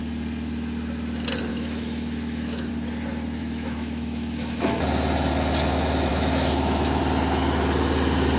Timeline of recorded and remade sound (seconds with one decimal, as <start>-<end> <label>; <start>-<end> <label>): 0.0-1.5 recorded; 1.5-2.7 remade; 2.7-3.4 recorded; 3.4-4.8 remade; 4.8-6.1 recorded; 6.1-7.0 remade; 7.0-8.4 recorded